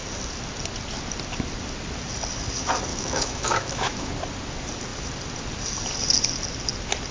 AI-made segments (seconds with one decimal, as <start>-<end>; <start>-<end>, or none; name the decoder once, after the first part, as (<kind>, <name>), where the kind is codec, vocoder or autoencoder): 2.9-4.1 (autoencoder, DAC-VAE)